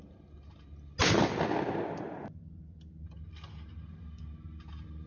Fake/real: real